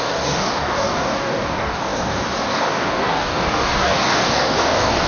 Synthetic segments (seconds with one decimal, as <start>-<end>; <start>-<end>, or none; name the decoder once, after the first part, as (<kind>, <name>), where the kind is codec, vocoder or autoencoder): 0.0-5.1 (codec, DAC)

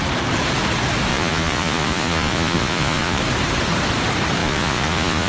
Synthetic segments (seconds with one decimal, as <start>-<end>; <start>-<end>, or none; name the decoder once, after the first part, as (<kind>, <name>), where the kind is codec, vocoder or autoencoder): 1.1-3.2 (vocoder, Vocos); 4.4-5.3